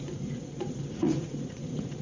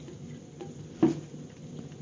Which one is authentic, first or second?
second